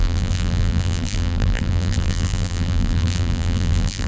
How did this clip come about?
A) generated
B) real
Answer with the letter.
A